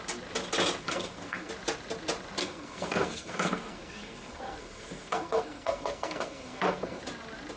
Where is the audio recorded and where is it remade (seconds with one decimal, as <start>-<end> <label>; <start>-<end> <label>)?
0.0-0.8 recorded; 0.8-1.5 remade; 1.5-2.4 recorded; 2.4-7.0 remade; 7.0-7.6 recorded